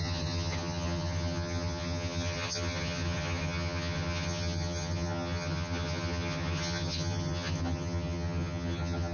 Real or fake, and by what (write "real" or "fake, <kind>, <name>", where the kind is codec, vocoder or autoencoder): fake, vocoder, HiFi-GAN